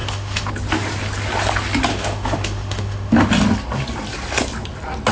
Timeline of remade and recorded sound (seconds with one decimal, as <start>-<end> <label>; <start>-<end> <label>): 0.0-0.5 remade; 0.5-1.9 recorded; 1.9-3.3 remade; 3.3-5.1 recorded